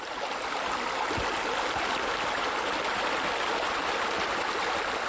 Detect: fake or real real